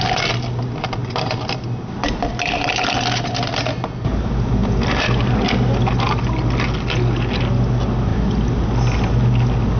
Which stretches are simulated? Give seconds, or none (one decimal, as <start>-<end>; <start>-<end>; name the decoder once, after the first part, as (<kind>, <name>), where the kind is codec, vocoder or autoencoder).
none

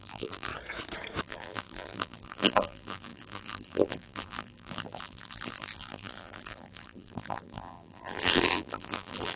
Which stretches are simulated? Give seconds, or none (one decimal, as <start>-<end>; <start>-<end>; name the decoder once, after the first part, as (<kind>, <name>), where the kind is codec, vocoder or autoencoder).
0.0-0.5 (vocoder, BigVGAN v2); 1.2-9.4